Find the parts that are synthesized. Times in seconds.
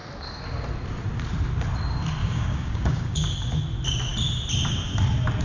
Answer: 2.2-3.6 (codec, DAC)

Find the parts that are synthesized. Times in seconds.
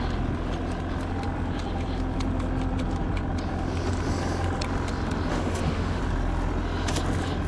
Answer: 5.3-6.0 (autoencoder, DAC-VAE)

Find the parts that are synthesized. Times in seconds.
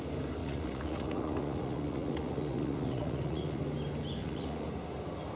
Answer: 0.4-3.6 (vocoder, Vocos); 4.2-4.7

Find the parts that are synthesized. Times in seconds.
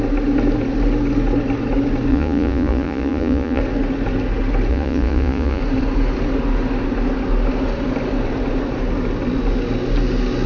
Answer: 2.1-3.6 (vocoder, Vocos); 4.7-5.6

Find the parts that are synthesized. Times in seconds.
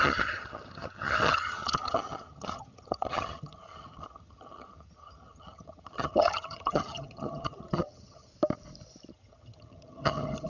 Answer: 0.0-8.3 (vocoder, HiFi-GAN); 9.1-10.5